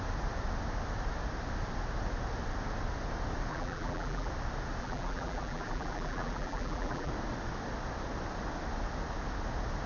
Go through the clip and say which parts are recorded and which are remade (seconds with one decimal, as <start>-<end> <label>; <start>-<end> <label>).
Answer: 0.0-3.5 recorded; 3.5-4.3 remade; 4.3-4.8 recorded; 4.8-7.1 remade; 7.1-9.9 recorded